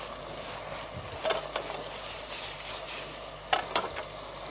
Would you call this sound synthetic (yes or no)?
no